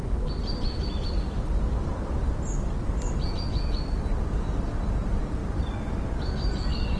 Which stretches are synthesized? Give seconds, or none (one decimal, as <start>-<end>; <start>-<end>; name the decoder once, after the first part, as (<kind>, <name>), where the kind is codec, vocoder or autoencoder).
none